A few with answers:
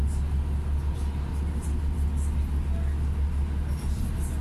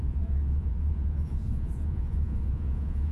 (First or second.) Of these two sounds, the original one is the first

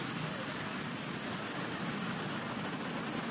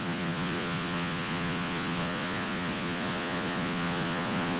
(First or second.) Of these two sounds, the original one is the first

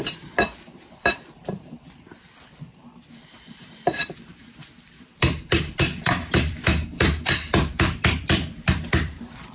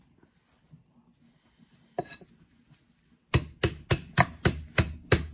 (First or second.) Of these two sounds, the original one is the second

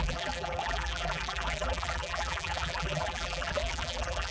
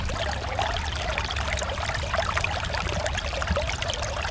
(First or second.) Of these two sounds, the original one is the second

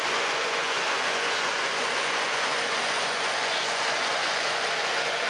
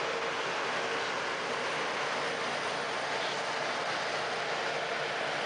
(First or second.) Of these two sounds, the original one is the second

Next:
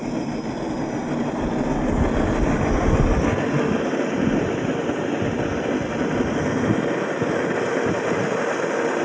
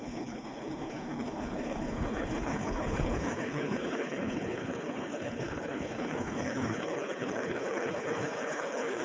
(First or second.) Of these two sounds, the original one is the first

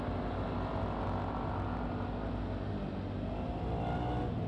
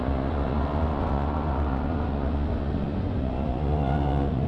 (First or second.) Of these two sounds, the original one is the first